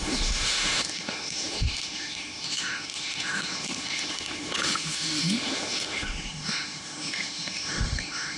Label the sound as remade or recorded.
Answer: remade